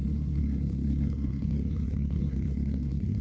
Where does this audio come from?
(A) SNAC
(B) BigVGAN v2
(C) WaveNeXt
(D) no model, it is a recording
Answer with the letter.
A